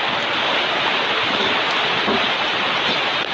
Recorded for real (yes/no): yes